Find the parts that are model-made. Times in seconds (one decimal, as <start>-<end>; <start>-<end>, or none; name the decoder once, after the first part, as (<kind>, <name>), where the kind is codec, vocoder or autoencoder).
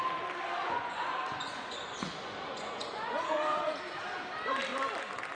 0.6-3.8 (vocoder, Vocos)